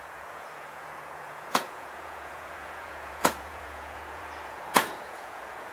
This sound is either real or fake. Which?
fake